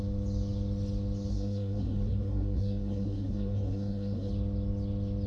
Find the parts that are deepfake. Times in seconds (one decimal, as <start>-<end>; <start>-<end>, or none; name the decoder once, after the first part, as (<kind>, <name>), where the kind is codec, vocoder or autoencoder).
1.3-4.3 (codec, SNAC)